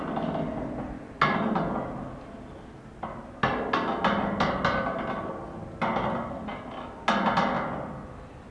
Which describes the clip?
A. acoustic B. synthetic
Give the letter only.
A